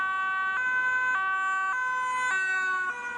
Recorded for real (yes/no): yes